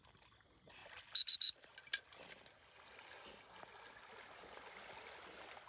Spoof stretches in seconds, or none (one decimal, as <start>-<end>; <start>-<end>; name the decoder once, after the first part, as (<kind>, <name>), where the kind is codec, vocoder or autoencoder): none